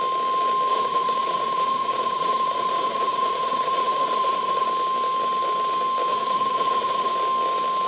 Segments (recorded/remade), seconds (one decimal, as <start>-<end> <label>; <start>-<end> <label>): 0.0-0.7 recorded; 0.7-4.7 remade; 4.7-6.1 recorded; 6.1-7.1 remade; 7.1-7.9 recorded